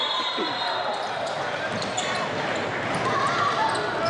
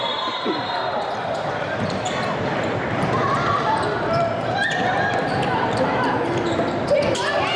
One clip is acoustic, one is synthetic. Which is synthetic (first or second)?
second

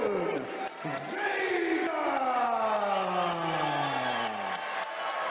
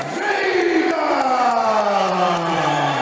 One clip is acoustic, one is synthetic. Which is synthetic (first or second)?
second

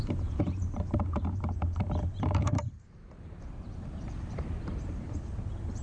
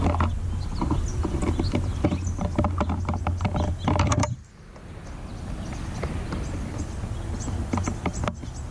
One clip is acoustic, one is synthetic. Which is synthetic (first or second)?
first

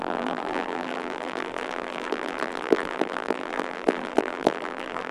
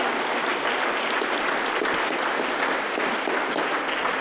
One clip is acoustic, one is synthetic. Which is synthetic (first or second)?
first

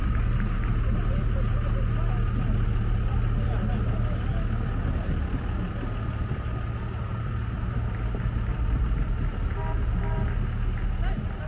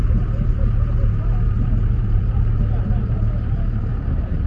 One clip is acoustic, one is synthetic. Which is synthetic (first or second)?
second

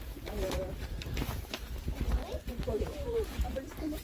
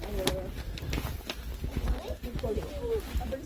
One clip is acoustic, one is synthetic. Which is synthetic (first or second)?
first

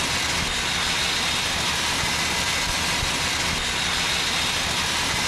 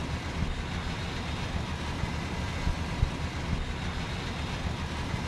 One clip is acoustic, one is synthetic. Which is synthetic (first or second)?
second